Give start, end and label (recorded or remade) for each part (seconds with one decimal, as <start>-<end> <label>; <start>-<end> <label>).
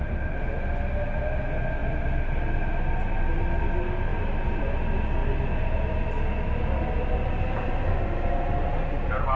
0.0-9.4 recorded